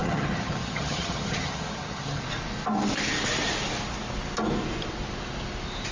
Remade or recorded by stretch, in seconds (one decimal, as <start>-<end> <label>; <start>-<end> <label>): 0.0-2.2 remade; 2.2-5.9 recorded

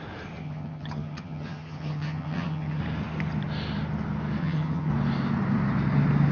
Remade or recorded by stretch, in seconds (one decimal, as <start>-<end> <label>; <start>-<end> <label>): 0.0-0.4 recorded; 0.4-2.8 remade; 2.8-4.4 recorded; 4.4-4.9 remade; 4.9-6.3 recorded

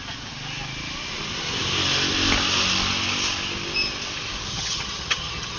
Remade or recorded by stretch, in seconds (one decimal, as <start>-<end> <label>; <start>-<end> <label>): 0.0-4.5 recorded; 4.5-5.6 remade

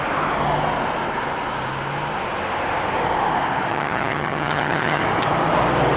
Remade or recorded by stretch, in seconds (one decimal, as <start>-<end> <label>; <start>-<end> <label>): 0.0-3.7 recorded; 3.7-5.0 remade; 5.0-6.0 recorded

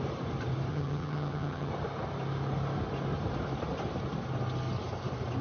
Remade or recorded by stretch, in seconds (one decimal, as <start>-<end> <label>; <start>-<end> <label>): 0.0-0.7 recorded; 0.7-1.7 remade; 1.7-5.4 recorded

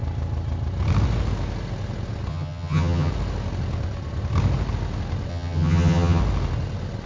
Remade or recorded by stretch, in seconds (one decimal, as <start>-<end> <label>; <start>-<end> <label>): 0.0-2.3 recorded; 2.3-3.1 remade; 3.1-5.3 recorded; 5.3-6.2 remade; 6.2-7.1 recorded

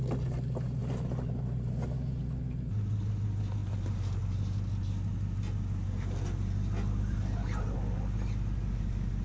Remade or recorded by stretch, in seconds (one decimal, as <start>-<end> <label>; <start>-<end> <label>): 0.0-9.2 recorded

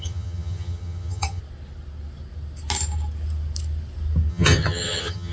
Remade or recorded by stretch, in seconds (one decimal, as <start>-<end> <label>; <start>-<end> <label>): 0.0-1.4 remade; 1.4-4.3 recorded; 4.3-5.3 remade